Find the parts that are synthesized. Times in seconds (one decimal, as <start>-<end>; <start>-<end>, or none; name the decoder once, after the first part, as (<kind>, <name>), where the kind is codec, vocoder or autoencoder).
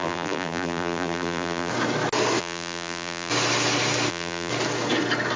0.0-1.7 (vocoder, BigVGAN v2); 2.4-3.3; 4.1-4.5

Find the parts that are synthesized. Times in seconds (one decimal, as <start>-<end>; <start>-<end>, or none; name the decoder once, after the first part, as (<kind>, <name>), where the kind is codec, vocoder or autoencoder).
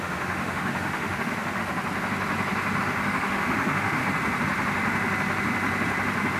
0.0-1.6 (autoencoder, DAC-VAE); 2.8-4.0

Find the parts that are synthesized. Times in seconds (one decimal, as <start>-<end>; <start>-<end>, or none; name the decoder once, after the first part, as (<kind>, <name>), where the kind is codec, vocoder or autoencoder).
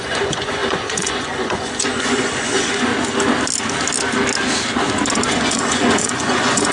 0.0-2.9 (vocoder, Vocos); 5.3-6.7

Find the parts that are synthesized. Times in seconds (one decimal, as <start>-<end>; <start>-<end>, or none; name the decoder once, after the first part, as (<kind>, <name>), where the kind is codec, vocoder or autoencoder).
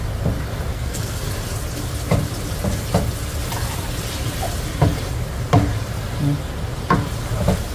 0.7-1.2 (codec, SNAC)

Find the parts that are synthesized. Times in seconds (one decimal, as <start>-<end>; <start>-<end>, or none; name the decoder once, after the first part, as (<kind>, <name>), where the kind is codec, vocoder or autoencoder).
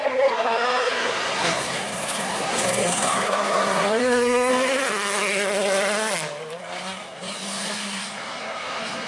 0.0-4.5 (codec, SNAC); 6.6-9.1